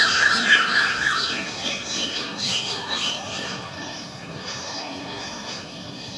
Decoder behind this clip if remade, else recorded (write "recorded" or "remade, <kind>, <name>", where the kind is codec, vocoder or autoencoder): remade, codec, SNAC